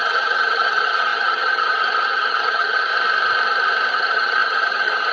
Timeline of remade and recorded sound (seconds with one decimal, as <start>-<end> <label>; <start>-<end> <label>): 0.0-2.9 remade; 2.9-3.9 recorded; 3.9-5.1 remade